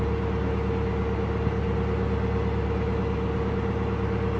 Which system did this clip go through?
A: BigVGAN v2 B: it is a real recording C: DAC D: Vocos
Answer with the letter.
B